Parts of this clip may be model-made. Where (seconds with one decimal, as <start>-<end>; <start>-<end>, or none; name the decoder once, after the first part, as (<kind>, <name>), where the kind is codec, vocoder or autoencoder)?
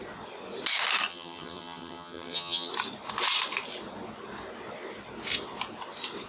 1.1-2.7 (vocoder, HiFi-GAN)